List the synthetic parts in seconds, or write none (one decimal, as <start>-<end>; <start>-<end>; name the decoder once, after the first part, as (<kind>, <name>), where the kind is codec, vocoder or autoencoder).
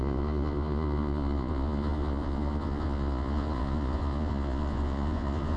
0.0-5.6 (vocoder, Vocos)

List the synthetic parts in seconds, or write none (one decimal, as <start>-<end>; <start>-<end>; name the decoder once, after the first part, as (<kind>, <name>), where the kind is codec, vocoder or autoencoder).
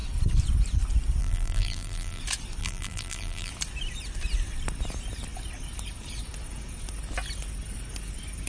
1.2-2.2 (vocoder, BigVGAN v2); 2.6-3.5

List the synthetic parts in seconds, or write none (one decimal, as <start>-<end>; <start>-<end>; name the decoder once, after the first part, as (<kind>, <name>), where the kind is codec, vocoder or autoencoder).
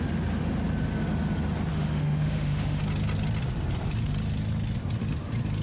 1.7-2.8 (autoencoder, DAC-VAE)